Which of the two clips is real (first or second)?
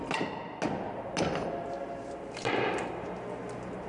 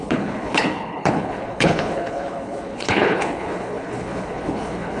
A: first